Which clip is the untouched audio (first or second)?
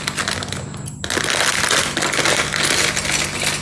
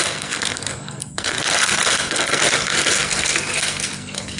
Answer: first